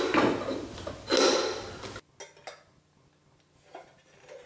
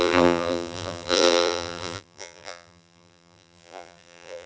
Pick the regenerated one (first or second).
second